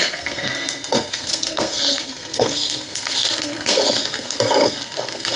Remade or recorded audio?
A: remade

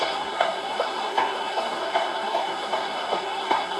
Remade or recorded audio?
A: remade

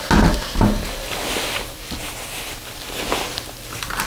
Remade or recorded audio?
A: recorded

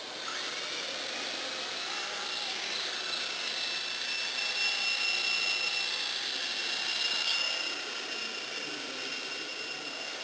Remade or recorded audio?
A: recorded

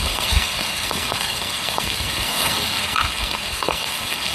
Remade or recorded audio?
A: remade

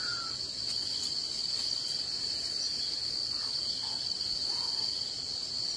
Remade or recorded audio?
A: recorded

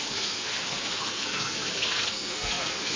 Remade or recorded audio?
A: remade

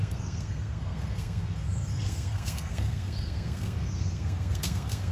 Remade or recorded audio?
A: remade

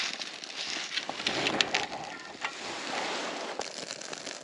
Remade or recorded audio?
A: recorded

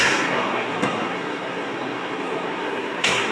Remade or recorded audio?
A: remade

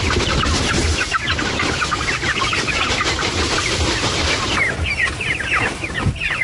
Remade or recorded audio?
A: recorded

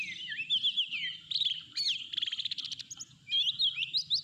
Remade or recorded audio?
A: recorded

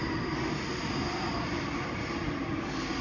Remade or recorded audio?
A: recorded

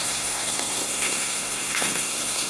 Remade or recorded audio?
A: remade